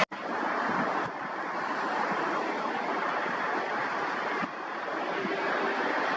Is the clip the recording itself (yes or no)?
yes